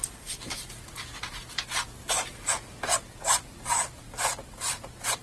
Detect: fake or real real